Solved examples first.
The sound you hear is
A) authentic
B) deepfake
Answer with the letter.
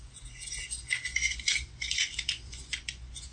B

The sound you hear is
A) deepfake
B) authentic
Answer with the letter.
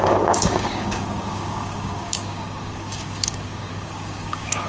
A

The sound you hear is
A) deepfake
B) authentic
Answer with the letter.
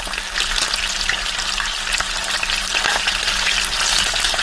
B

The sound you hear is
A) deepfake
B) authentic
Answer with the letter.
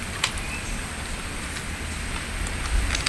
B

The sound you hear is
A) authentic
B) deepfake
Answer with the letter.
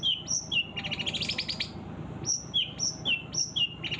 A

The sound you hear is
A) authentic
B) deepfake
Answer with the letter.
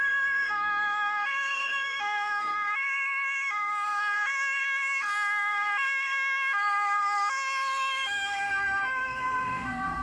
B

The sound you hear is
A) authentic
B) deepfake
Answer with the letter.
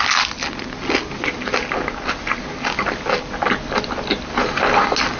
A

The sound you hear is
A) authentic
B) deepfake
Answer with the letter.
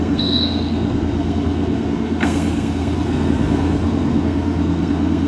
B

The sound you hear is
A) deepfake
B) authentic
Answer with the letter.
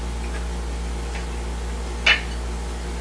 B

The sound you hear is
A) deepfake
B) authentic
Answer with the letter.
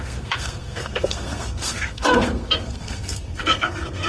A